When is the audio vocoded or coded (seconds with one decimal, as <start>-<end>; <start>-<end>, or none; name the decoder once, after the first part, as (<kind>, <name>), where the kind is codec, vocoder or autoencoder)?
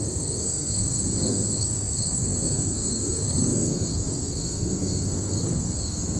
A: 0.0-6.2 (codec, SNAC)